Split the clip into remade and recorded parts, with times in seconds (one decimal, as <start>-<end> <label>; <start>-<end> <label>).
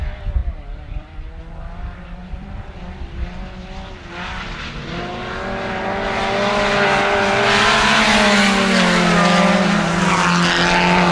0.0-0.4 recorded; 0.4-1.4 remade; 1.4-2.2 recorded; 2.2-2.9 remade; 2.9-11.1 recorded